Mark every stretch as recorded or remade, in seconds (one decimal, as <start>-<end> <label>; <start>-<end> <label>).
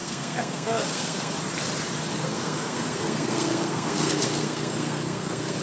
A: 0.0-1.3 remade; 1.3-2.1 recorded; 2.1-5.6 remade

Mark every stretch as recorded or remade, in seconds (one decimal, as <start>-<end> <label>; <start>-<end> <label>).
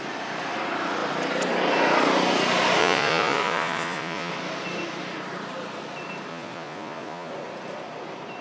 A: 0.0-2.8 recorded; 2.8-4.3 remade; 4.3-6.3 recorded; 6.3-7.3 remade; 7.3-8.4 recorded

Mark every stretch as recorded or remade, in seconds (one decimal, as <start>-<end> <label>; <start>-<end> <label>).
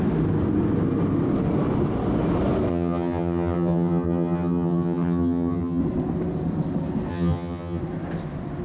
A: 0.0-2.7 recorded; 2.7-5.8 remade; 5.8-7.1 recorded; 7.1-7.8 remade; 7.8-8.6 recorded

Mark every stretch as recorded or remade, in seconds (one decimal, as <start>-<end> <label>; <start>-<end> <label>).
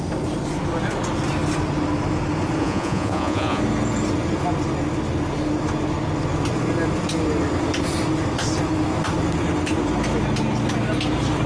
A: 0.0-2.6 recorded; 2.6-3.6 remade; 3.6-11.5 recorded